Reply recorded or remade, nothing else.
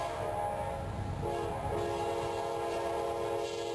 recorded